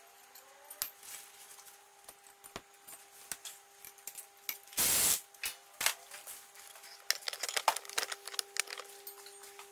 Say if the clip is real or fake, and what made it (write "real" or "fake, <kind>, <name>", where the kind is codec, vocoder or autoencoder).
real